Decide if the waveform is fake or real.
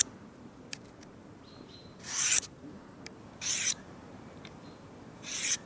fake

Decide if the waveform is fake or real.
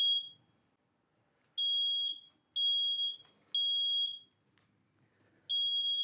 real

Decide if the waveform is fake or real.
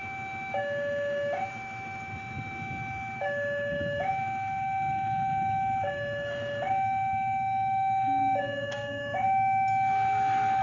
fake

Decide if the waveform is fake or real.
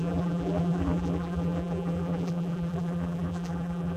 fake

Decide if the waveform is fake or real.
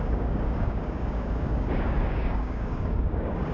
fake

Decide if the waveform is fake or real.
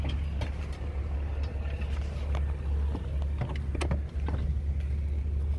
real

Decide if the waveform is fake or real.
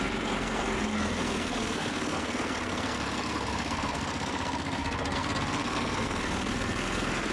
fake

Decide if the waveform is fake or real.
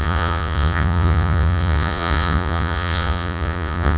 fake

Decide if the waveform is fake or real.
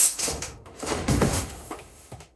fake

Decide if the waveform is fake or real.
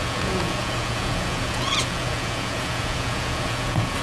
fake